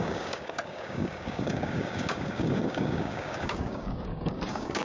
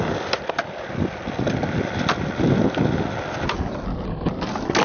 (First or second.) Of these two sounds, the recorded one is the second